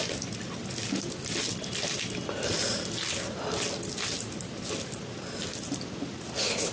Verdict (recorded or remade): recorded